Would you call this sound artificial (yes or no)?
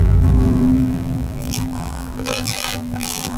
yes